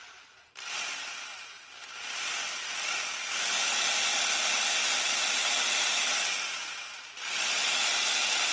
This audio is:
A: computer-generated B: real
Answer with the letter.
B